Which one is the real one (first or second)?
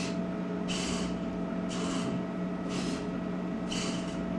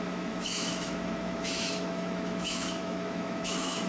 first